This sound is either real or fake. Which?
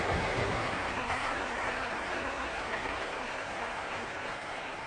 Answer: fake